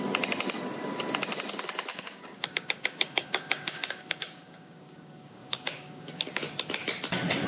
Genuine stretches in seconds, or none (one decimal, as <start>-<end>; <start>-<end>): 0.0-1.9; 6.4-7.5